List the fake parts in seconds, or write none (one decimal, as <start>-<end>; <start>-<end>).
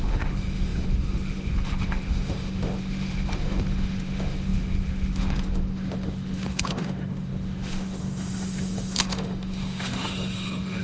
0.0-10.8